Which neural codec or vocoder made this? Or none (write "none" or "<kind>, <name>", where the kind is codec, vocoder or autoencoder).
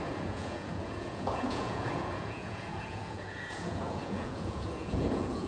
vocoder, Vocos